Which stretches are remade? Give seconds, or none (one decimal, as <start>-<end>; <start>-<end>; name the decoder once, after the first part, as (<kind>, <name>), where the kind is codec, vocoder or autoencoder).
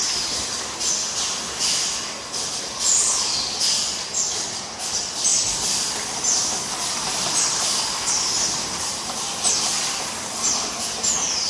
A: none